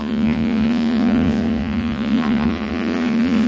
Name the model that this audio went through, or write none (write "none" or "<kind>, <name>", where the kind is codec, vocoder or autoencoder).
vocoder, Vocos